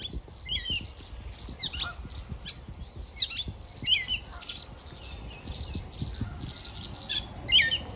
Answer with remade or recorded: recorded